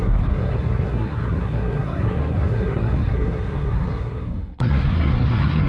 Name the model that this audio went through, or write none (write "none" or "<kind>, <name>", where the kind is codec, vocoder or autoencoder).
codec, SNAC